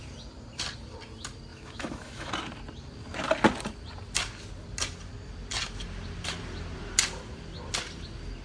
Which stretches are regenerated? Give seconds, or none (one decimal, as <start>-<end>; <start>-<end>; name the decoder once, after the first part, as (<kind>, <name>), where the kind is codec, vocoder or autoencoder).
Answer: 1.5-2.3 (autoencoder, DAC-VAE)